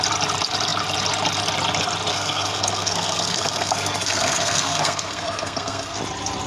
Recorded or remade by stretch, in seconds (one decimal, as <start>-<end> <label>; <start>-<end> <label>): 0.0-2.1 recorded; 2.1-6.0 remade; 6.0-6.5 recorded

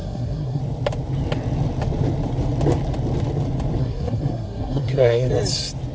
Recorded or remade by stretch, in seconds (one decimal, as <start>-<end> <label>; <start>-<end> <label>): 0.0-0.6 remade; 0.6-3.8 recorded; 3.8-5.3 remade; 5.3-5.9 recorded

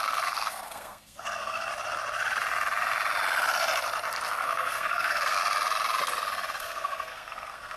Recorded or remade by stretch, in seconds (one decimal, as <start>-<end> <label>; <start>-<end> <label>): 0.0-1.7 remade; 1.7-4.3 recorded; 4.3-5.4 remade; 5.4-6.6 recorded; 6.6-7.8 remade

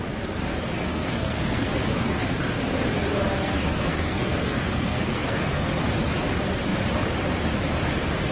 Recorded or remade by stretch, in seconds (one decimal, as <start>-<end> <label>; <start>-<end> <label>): 0.0-0.9 recorded; 0.9-1.7 remade; 1.7-3.4 recorded; 3.4-5.7 remade; 5.7-8.3 recorded